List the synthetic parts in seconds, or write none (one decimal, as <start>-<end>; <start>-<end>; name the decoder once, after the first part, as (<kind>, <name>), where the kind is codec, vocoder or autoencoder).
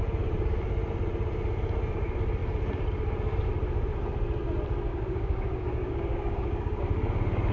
4.9-6.8 (codec, DAC)